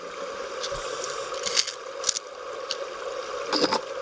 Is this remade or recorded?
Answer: recorded